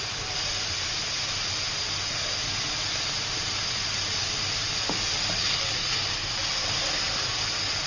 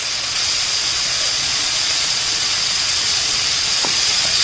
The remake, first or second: second